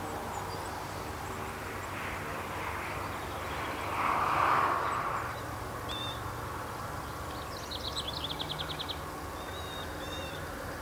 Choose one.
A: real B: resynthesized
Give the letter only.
A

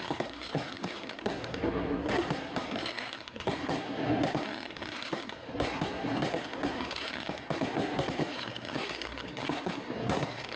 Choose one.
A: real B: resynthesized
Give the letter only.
B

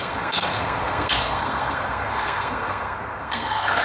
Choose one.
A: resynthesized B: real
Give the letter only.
A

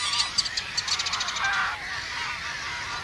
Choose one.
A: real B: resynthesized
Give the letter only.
A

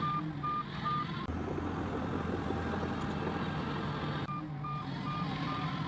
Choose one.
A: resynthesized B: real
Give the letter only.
B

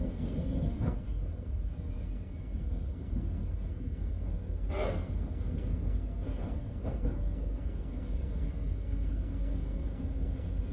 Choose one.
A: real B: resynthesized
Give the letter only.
B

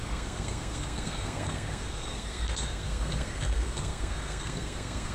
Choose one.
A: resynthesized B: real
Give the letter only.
A